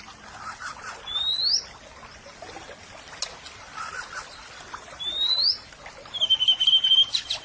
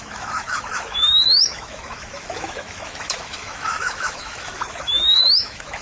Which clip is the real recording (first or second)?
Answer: first